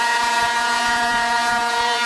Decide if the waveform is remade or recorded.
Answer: remade